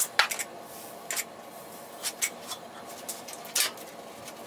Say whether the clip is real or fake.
real